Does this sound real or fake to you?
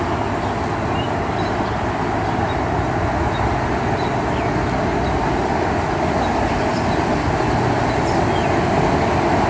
real